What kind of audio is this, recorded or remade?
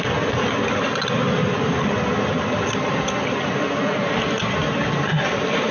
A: recorded